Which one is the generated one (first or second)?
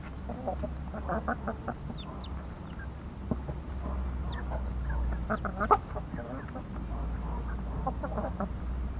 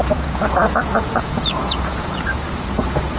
second